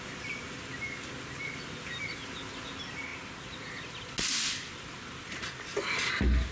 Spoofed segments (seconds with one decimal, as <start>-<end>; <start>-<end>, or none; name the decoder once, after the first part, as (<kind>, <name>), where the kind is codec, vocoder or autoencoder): none